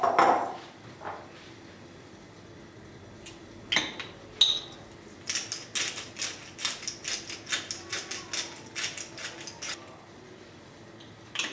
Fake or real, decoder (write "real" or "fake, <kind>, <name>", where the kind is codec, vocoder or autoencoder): real